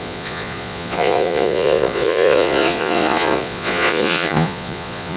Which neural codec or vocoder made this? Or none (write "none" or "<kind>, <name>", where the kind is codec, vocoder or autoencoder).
vocoder, Vocos